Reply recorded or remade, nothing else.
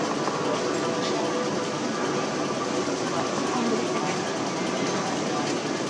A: recorded